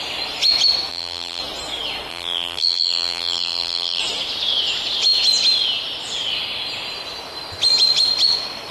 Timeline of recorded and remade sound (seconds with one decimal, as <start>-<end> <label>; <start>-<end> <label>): 0.0-0.9 recorded; 0.9-1.4 remade; 1.4-2.1 recorded; 2.1-4.0 remade; 4.0-8.7 recorded